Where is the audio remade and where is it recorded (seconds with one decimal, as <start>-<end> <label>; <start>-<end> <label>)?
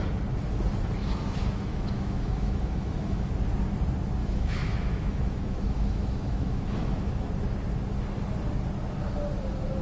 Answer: 0.0-1.0 recorded; 1.0-3.3 remade; 3.3-4.2 recorded; 4.2-7.3 remade; 7.3-9.8 recorded